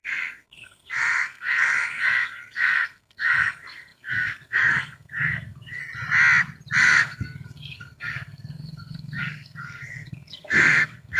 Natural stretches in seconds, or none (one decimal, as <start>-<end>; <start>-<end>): 5.8-6.8